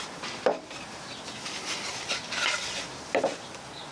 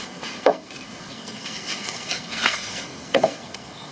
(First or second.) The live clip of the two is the first